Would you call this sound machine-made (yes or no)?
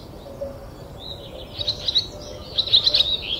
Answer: no